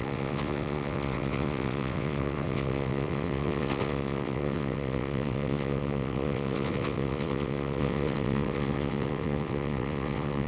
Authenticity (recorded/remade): remade